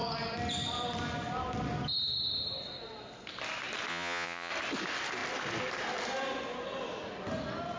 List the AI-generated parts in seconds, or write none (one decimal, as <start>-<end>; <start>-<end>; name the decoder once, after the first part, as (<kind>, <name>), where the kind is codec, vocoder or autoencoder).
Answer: 3.9-4.5 (vocoder, Vocos)

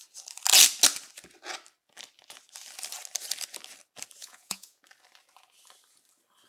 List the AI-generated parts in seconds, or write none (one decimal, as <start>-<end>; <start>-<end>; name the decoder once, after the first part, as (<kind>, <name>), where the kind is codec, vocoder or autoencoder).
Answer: 4.2-4.8 (vocoder, Vocos)